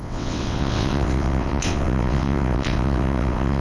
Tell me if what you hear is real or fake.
fake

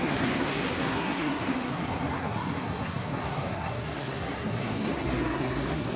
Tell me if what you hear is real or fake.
fake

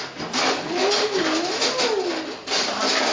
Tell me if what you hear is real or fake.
real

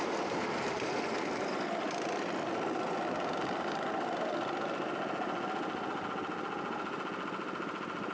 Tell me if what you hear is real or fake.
real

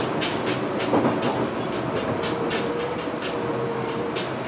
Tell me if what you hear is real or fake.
real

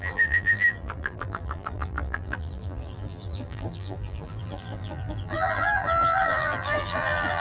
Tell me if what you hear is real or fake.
fake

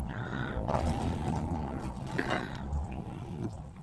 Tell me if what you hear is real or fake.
fake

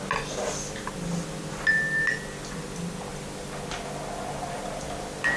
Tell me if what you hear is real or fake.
real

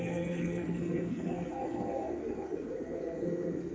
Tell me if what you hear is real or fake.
fake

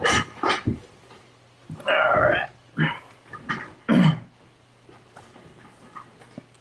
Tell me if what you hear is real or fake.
real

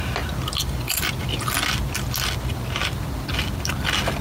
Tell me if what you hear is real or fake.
real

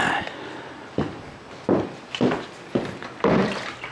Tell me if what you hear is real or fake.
real